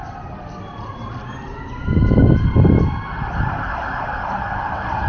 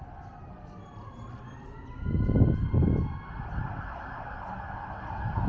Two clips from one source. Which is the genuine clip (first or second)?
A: second